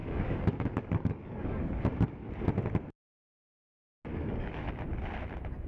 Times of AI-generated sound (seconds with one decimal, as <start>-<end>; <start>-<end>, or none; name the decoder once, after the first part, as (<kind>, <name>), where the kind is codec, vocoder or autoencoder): 0.0-2.3 (codec, DAC); 4.1-4.7